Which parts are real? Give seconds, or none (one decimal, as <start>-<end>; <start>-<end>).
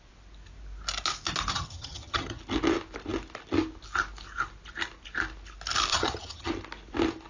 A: 0.0-1.5; 2.4-5.9; 6.5-7.3